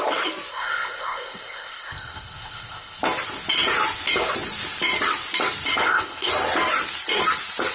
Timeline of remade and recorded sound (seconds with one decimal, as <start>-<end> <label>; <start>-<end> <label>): 0.0-0.5 recorded; 0.5-3.0 remade; 3.0-5.8 recorded; 5.8-6.3 remade; 6.3-7.7 recorded

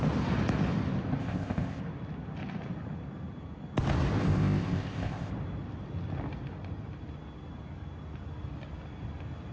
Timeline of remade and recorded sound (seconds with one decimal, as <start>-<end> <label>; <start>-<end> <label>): 0.0-1.2 recorded; 1.2-1.8 remade; 1.8-4.2 recorded; 4.2-5.3 remade; 5.3-9.5 recorded

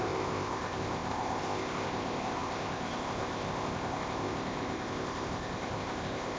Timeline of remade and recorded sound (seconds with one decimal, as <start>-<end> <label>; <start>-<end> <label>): 0.0-6.4 remade